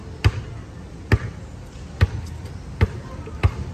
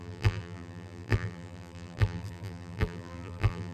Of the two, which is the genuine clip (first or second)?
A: first